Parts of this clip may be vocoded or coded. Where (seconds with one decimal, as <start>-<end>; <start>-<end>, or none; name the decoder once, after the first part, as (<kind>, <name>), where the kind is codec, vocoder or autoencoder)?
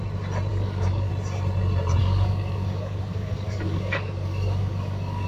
0.5-1.1 (codec, DAC); 2.0-5.3